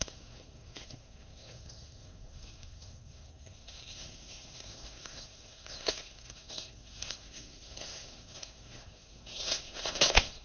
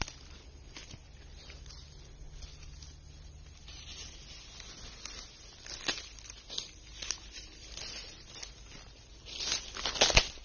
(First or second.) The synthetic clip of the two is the first